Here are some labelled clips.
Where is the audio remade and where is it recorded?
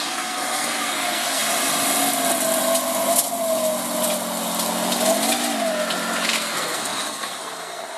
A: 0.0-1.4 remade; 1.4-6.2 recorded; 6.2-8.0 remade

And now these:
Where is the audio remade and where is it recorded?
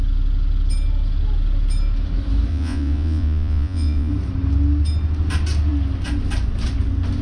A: 0.0-2.5 recorded; 2.5-4.1 remade; 4.1-7.2 recorded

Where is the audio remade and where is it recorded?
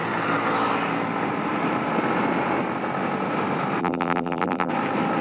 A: 0.0-3.8 recorded; 3.8-4.7 remade; 4.7-5.2 recorded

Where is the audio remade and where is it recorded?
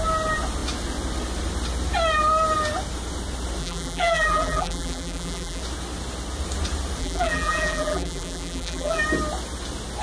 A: 0.0-3.6 recorded; 3.6-5.6 remade; 5.6-7.0 recorded; 7.0-9.0 remade; 9.0-10.0 recorded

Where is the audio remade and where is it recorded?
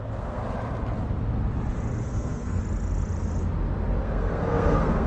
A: 0.0-0.4 remade; 0.4-2.0 recorded; 2.0-2.6 remade; 2.6-4.0 recorded; 4.0-5.1 remade